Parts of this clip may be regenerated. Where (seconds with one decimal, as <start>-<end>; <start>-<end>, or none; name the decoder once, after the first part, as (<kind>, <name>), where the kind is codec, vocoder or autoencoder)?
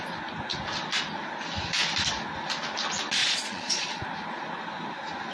3.2-4.0 (vocoder, Vocos)